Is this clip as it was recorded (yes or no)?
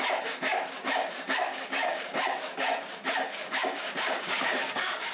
no